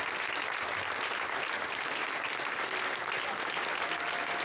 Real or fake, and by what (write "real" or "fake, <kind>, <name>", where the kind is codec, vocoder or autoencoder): real